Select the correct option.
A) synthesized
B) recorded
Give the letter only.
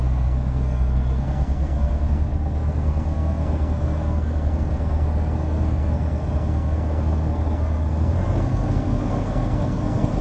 A